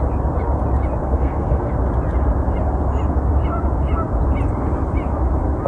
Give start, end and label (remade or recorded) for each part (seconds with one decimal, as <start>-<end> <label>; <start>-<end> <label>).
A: 0.0-1.0 recorded; 1.0-1.7 remade; 1.7-5.7 recorded